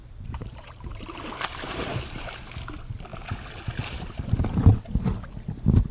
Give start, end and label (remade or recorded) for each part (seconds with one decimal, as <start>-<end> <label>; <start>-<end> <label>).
0.0-1.8 remade; 1.8-3.1 recorded; 3.1-5.0 remade; 5.0-5.9 recorded